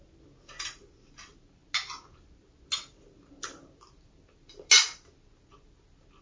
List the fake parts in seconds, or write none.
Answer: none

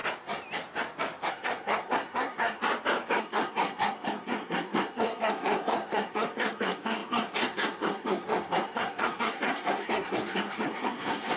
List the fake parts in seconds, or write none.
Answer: 1.3-2.6 (codec, SNAC); 3.2-11.4

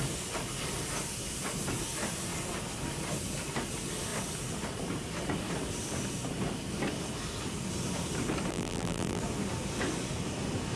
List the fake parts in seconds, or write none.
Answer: 8.5-9.2 (vocoder, BigVGAN v2)

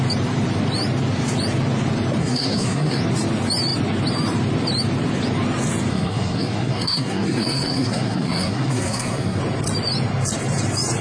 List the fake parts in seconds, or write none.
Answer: 2.2-3.0 (codec, SNAC); 5.9-9.4

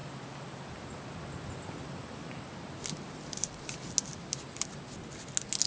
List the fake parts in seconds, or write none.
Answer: none

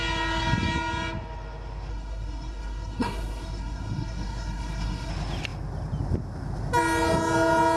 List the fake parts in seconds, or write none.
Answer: 1.9-5.1 (codec, SNAC)

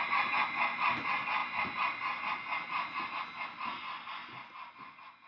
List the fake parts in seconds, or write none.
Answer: none